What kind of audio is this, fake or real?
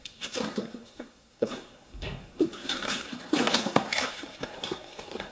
fake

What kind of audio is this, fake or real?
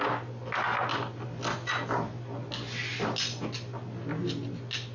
real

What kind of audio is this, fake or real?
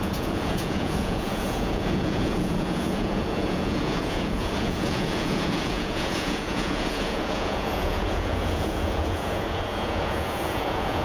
fake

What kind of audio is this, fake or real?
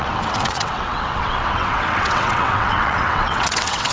fake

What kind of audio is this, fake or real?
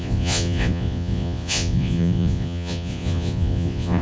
fake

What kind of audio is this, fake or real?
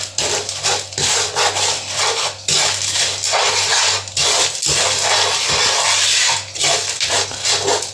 real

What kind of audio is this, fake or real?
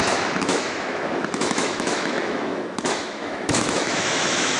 fake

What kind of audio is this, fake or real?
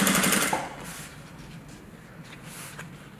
real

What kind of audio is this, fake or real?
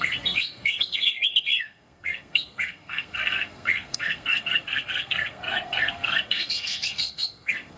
fake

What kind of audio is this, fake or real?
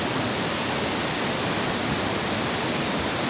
real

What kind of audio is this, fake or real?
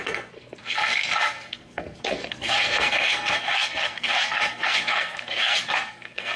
fake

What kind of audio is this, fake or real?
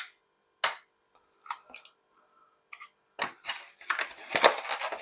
real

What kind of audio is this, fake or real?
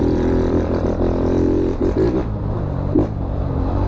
fake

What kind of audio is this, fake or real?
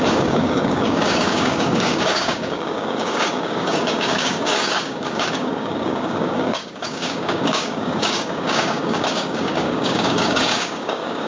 fake